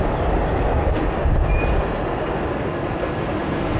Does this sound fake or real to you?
real